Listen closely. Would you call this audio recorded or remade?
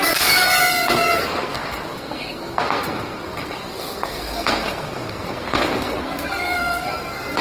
remade